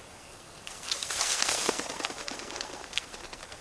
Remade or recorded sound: remade